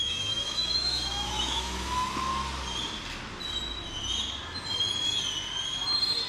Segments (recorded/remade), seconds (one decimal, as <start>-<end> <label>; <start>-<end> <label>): 0.0-2.3 remade; 2.3-6.3 recorded